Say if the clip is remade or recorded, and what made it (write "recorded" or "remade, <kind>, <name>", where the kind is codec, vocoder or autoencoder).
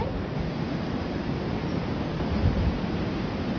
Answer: remade, vocoder, BigVGAN v2